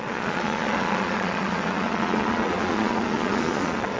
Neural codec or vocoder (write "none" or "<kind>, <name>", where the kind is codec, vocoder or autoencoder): vocoder, Vocos